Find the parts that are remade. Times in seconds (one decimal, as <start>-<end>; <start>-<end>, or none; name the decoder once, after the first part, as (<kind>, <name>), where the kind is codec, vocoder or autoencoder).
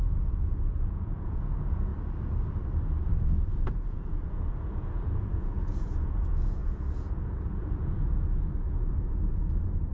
0.0-1.9 (vocoder, Vocos); 3.7-9.9